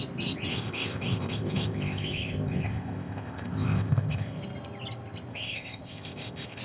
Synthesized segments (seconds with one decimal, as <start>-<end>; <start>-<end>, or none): 0.5-4.4; 5.3-6.6